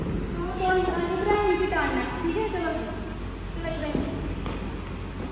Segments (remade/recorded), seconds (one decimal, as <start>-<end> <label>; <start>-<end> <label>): 0.0-3.7 recorded; 3.7-4.7 remade; 4.7-5.3 recorded